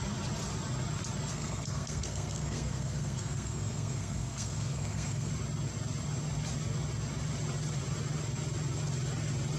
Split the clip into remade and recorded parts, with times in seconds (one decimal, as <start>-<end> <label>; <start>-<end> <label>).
0.0-1.3 recorded; 1.3-5.3 remade; 5.3-9.6 recorded